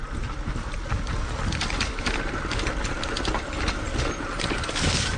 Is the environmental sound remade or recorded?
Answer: recorded